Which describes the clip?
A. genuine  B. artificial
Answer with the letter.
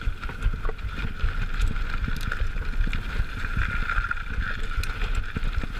A